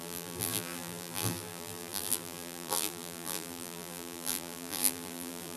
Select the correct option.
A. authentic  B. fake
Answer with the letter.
B